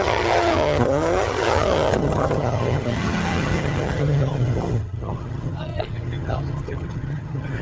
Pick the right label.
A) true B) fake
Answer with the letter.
B